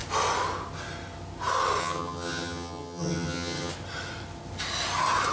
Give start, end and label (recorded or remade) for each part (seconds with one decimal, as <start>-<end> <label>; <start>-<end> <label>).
0.0-1.8 recorded; 1.8-3.7 remade; 3.7-5.3 recorded